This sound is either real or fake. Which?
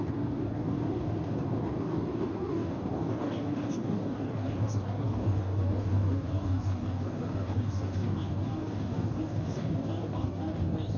fake